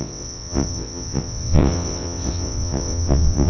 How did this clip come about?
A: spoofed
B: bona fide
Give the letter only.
A